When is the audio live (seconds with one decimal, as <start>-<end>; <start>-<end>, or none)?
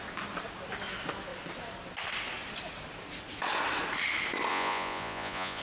0.0-4.5